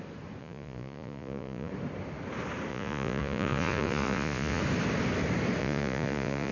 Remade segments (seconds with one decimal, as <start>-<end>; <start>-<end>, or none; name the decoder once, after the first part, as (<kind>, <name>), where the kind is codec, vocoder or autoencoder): 0.4-1.7 (vocoder, Vocos); 2.7-4.6; 5.6-6.5